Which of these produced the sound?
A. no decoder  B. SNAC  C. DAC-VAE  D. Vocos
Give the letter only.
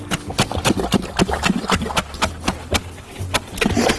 A